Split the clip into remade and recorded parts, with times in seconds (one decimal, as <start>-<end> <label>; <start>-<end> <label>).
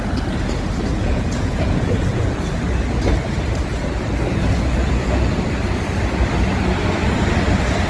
0.0-0.9 recorded; 0.9-2.4 remade; 2.4-4.8 recorded; 4.8-5.5 remade; 5.5-7.9 recorded